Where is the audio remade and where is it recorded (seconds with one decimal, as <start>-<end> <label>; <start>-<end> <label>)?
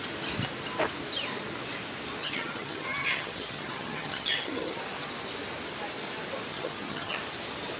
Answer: 0.0-2.2 recorded; 2.2-4.8 remade; 4.8-6.5 recorded; 6.5-7.2 remade; 7.2-7.8 recorded